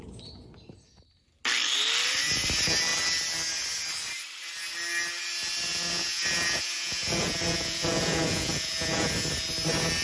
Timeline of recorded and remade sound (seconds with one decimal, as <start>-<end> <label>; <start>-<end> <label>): 0.0-5.7 recorded; 5.7-9.1 remade; 9.1-10.0 recorded